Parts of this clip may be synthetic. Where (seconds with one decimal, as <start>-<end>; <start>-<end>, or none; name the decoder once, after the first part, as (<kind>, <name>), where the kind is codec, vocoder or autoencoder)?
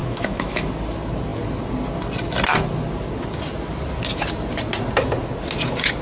0.0-0.7 (autoencoder, DAC-VAE)